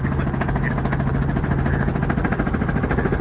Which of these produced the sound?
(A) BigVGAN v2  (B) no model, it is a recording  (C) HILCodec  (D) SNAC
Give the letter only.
A